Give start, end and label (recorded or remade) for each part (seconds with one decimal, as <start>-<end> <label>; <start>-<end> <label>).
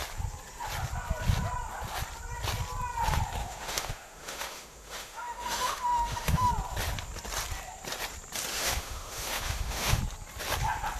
0.0-3.4 recorded; 3.4-6.5 remade; 6.5-8.5 recorded; 8.5-10.0 remade; 10.0-11.0 recorded